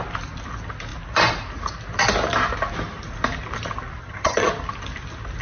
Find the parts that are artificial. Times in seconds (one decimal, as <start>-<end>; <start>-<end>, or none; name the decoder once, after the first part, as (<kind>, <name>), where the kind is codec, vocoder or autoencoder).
4.0-4.5 (vocoder, HiFi-GAN)